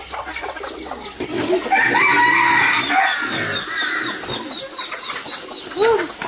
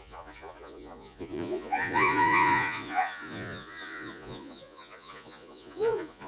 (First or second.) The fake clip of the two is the second